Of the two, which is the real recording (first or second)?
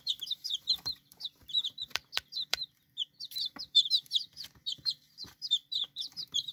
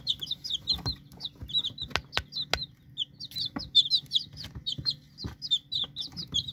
second